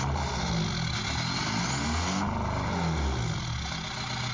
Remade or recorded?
recorded